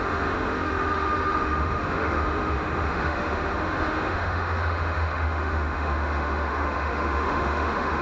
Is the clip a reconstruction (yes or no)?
yes